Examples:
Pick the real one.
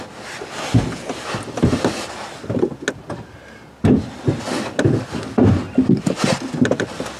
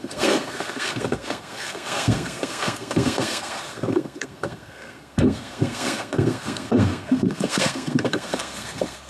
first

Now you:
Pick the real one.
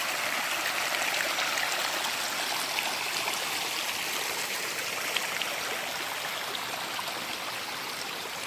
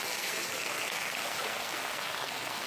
first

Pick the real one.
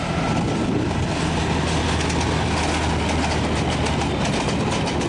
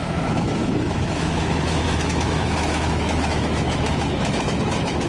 first